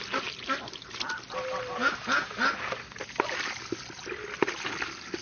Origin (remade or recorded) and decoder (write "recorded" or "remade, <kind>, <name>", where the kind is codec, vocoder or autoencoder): recorded